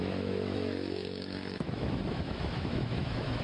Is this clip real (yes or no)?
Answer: no